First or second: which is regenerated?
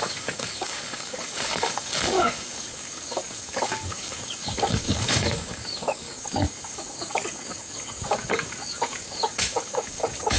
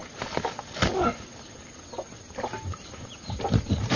first